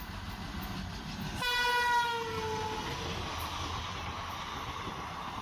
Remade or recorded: recorded